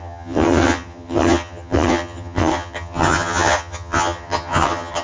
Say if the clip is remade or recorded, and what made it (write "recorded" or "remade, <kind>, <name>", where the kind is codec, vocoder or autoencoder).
remade, vocoder, HiFi-GAN